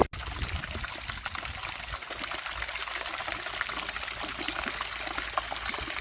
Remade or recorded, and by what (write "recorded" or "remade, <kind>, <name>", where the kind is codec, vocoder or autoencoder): recorded